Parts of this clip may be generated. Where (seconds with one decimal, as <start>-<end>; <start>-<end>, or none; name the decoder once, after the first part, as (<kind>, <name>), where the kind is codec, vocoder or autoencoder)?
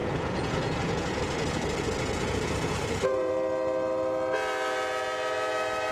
0.0-3.3 (vocoder, Vocos)